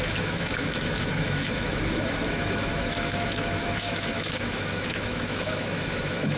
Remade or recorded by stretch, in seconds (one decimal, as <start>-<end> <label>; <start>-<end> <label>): 0.0-6.4 remade

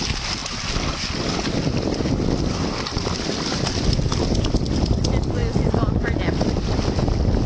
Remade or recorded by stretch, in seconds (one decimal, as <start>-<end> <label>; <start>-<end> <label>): 0.0-7.5 recorded

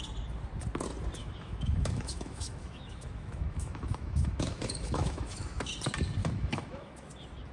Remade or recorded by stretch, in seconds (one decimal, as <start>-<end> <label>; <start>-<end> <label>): 0.0-1.2 recorded; 1.2-5.7 remade; 5.7-6.2 recorded; 6.2-7.1 remade; 7.1-7.5 recorded

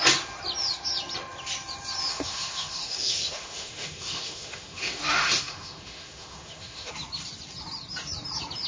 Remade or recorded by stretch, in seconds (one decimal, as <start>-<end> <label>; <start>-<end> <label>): 0.0-2.1 recorded; 2.1-6.9 remade; 6.9-8.7 recorded

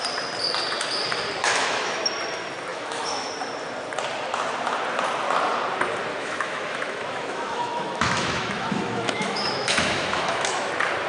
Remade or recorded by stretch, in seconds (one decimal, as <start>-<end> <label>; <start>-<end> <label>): 0.0-1.4 recorded; 1.4-2.0 remade; 2.0-2.7 recorded; 2.7-3.3 remade; 3.3-6.1 recorded; 6.1-10.7 remade; 10.7-11.1 recorded

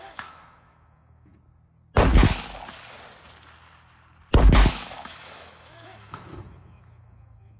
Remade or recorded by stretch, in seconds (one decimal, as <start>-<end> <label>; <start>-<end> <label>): 0.0-1.3 remade; 1.3-4.7 recorded; 4.7-7.6 remade

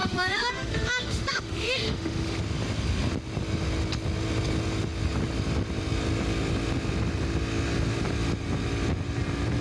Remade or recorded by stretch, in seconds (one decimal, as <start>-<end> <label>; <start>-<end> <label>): 0.0-2.4 remade; 2.4-9.6 recorded

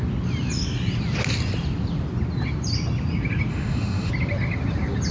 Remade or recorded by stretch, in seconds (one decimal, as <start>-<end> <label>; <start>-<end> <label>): 0.0-3.5 recorded; 3.5-4.1 remade; 4.1-5.1 recorded